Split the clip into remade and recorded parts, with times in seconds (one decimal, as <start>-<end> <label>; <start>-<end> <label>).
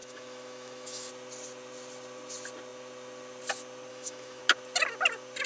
0.0-1.1 remade; 1.1-3.9 recorded; 3.9-4.4 remade; 4.4-5.5 recorded